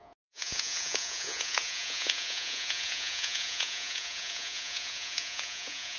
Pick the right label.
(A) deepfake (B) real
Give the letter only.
A